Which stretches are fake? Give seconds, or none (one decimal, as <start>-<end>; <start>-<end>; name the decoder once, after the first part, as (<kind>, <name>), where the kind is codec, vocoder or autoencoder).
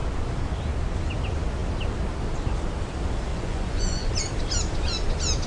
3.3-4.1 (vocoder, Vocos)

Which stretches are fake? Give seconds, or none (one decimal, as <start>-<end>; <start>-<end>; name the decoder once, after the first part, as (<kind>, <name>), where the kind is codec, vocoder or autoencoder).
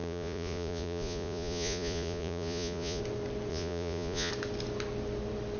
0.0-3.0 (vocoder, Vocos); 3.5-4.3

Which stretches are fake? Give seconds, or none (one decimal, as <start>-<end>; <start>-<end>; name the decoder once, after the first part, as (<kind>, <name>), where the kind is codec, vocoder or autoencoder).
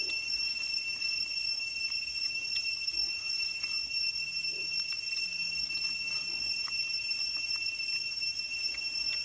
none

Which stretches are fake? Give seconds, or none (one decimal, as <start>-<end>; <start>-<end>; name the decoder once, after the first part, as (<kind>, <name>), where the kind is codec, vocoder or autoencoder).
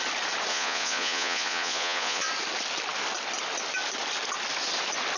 0.5-2.3 (vocoder, Vocos)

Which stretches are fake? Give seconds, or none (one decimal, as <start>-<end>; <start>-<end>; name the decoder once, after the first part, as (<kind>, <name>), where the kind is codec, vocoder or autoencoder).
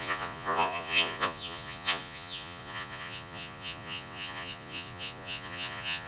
0.0-6.1 (vocoder, Vocos)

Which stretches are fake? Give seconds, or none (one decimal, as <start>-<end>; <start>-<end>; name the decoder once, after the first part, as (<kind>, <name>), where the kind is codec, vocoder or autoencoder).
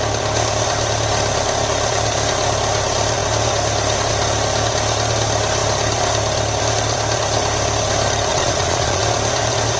8.3-9.0 (vocoder, Vocos)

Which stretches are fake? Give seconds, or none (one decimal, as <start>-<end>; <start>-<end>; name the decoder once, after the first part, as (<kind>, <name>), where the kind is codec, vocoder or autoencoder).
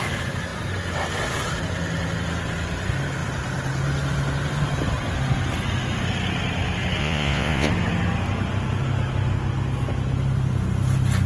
7.0-7.7 (vocoder, Vocos)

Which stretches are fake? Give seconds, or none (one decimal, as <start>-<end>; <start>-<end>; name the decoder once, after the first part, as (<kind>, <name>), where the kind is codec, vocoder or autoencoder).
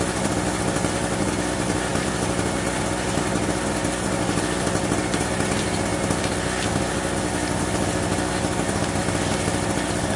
none